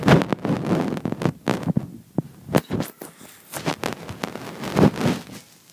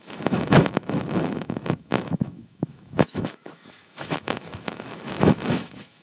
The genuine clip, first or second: first